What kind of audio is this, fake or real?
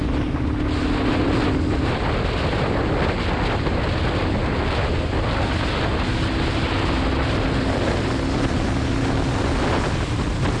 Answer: real